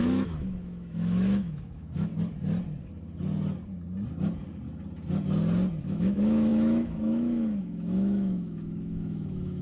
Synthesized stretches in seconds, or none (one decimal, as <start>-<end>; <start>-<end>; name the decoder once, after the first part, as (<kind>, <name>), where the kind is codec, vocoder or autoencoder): 0.0-2.1 (autoencoder, DAC-VAE); 5.8-9.6